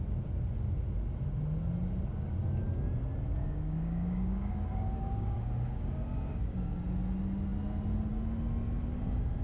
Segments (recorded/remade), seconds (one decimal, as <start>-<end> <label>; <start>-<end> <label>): 0.0-3.4 recorded; 3.4-6.7 remade; 6.7-9.4 recorded